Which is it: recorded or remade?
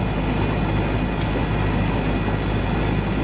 recorded